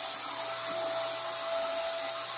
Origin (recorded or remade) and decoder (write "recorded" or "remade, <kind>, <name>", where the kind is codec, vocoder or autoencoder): recorded